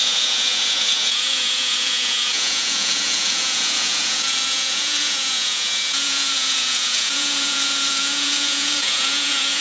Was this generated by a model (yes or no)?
yes